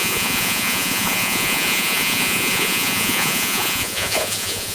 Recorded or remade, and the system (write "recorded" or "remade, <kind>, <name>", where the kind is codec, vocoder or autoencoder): remade, vocoder, Vocos